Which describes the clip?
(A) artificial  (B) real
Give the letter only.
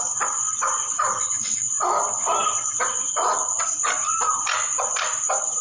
B